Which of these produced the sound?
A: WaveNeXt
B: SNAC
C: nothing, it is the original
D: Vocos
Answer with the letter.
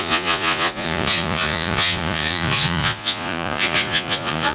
D